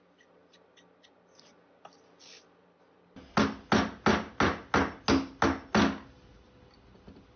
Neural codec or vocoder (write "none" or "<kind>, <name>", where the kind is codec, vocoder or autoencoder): none